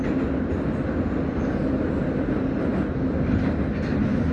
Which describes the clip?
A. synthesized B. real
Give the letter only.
B